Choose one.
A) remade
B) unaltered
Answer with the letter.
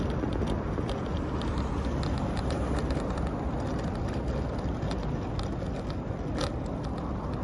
B